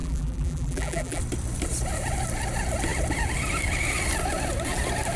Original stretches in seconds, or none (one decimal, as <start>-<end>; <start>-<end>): 1.2-5.2